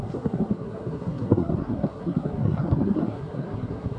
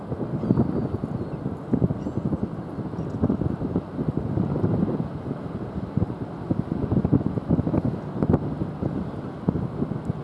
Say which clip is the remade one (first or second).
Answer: first